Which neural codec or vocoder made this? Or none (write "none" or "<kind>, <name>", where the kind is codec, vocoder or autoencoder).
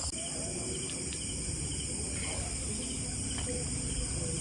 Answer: none